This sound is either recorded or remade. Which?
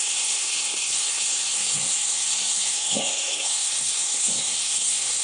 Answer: remade